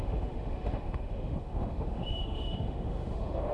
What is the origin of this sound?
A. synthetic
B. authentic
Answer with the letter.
A